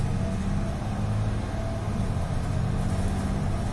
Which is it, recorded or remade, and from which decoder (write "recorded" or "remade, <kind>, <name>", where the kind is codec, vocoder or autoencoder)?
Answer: recorded